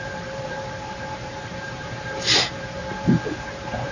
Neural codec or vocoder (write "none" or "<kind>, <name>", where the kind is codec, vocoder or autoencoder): vocoder, BigVGAN v2